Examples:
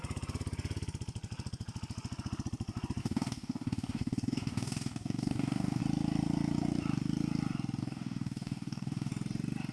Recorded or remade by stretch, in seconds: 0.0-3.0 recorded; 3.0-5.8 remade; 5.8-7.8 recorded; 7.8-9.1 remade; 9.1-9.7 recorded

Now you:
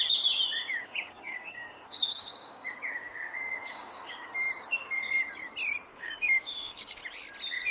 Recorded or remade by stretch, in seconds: 0.0-0.6 recorded; 0.6-5.0 remade; 5.0-5.9 recorded; 5.9-7.0 remade; 7.0-7.7 recorded

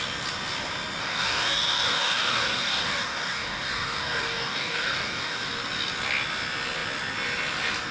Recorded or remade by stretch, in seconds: 0.0-1.0 recorded; 1.0-5.5 remade; 5.5-7.9 recorded

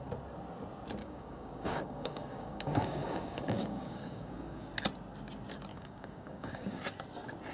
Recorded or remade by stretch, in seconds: 0.0-1.0 recorded; 1.0-4.7 remade; 4.7-5.7 recorded; 5.7-6.8 remade; 6.8-7.5 recorded

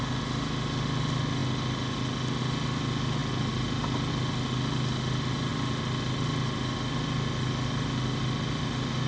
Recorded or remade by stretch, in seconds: 0.0-9.1 recorded

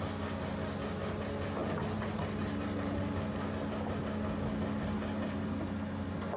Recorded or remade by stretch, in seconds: 0.0-6.4 recorded

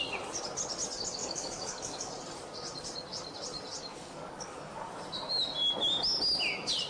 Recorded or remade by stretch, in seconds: 0.0-1.2 recorded; 1.2-2.1 remade; 2.1-3.9 recorded; 3.9-4.9 remade; 4.9-6.9 recorded